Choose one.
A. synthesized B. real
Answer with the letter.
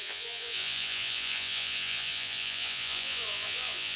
A